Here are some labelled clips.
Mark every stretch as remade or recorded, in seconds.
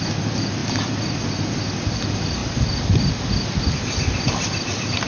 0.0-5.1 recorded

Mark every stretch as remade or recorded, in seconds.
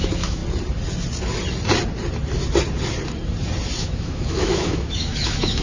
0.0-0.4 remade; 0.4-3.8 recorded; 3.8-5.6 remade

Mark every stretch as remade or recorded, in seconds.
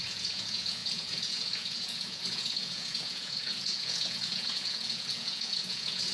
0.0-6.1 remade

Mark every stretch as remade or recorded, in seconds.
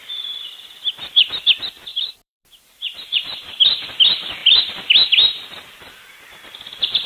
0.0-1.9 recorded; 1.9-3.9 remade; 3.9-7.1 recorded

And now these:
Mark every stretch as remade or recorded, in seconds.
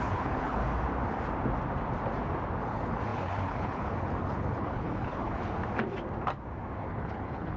0.0-0.6 remade; 0.6-2.6 recorded; 2.6-5.6 remade; 5.6-6.9 recorded; 6.9-7.6 remade